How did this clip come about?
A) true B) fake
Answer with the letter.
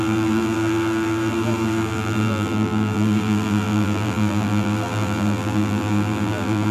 B